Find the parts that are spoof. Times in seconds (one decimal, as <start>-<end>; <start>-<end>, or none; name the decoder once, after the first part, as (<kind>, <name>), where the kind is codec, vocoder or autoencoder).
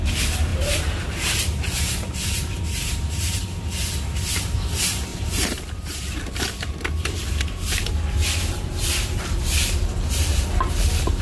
0.5-3.6 (vocoder, BigVGAN v2); 5.1-10.1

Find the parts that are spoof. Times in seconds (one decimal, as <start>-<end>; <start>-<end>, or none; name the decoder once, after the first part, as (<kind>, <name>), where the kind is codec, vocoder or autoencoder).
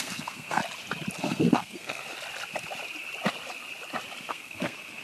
0.0-0.6 (codec, SNAC); 1.2-2.0; 4.3-5.0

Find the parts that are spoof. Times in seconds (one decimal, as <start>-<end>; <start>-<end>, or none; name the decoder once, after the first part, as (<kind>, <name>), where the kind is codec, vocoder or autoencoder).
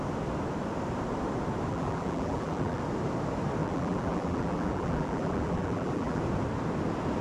1.7-2.8 (vocoder, BigVGAN v2); 3.6-6.2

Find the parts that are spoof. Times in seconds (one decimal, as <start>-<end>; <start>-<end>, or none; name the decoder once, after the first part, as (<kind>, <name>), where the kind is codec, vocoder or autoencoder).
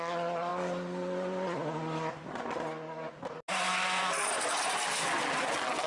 none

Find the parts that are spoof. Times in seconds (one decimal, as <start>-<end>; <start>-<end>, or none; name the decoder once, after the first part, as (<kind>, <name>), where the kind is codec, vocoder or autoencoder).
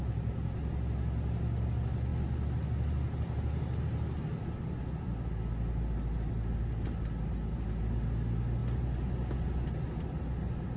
none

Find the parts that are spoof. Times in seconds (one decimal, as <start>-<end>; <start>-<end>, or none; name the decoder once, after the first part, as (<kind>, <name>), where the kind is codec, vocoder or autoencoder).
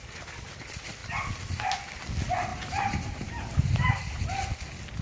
2.5-4.2 (vocoder, BigVGAN v2)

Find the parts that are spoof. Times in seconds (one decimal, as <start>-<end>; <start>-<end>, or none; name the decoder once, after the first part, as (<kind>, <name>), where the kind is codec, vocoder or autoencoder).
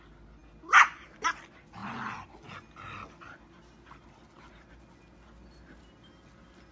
none